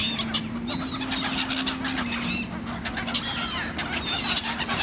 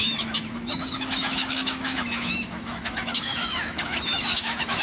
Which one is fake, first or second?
second